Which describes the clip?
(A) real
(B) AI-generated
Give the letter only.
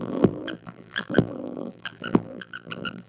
B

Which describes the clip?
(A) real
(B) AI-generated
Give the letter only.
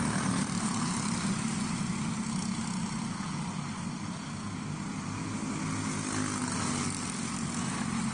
A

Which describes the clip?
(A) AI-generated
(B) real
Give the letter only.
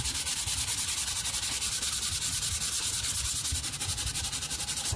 B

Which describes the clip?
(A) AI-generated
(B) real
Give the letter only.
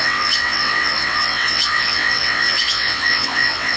A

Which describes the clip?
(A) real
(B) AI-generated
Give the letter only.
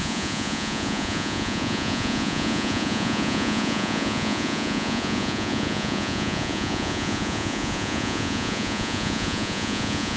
B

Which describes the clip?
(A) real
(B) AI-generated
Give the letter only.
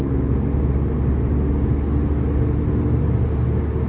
A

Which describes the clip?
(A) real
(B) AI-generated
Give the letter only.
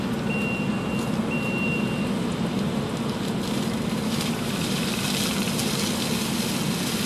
A